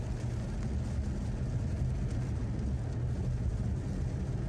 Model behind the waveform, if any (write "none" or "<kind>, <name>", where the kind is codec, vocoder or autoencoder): none